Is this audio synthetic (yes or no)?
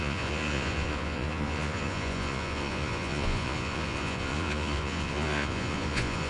yes